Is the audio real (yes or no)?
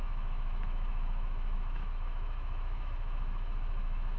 no